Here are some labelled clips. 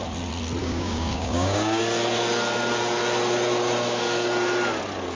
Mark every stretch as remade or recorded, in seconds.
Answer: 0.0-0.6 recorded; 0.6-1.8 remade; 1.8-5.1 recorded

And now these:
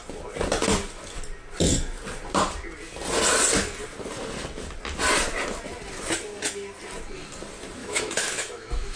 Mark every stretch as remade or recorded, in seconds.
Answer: 0.0-7.8 recorded; 7.8-9.0 remade

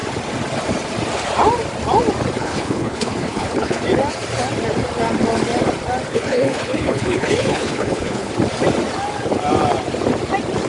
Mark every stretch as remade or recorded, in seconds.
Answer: 0.0-2.4 recorded; 2.4-3.8 remade; 3.8-6.1 recorded; 6.1-8.3 remade; 8.3-10.7 recorded

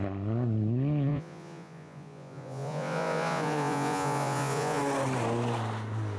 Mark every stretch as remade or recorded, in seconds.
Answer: 0.0-1.1 recorded; 1.1-4.8 remade; 4.8-6.2 recorded

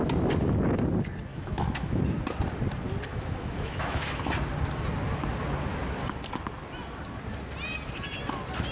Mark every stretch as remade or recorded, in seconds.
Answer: 0.0-1.3 recorded; 1.3-2.0 remade; 2.0-3.1 recorded; 3.1-4.2 remade; 4.2-8.7 recorded

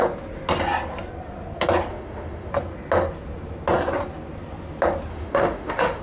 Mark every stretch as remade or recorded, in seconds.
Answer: 0.0-1.9 recorded; 1.9-2.5 remade; 2.5-5.1 recorded; 5.1-6.0 remade

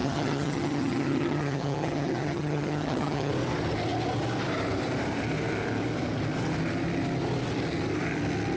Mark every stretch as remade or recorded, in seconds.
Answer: 0.0-3.3 remade; 3.3-8.6 recorded

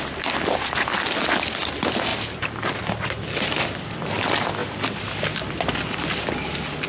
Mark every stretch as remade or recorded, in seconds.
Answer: 0.0-6.9 recorded